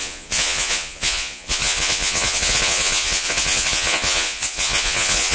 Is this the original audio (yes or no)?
no